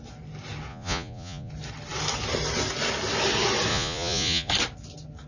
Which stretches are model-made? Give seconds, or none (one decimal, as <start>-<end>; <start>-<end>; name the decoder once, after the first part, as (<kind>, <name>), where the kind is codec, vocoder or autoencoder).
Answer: 0.7-1.5 (vocoder, Vocos); 3.7-4.5